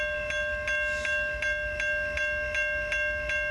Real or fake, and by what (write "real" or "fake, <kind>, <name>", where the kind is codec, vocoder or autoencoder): real